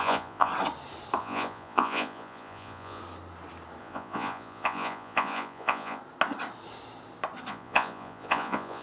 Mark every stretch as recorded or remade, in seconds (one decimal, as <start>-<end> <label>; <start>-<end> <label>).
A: 0.0-0.5 remade; 0.5-1.2 recorded; 1.2-3.0 remade; 3.0-3.8 recorded; 3.8-6.0 remade; 6.0-7.5 recorded; 7.5-8.8 remade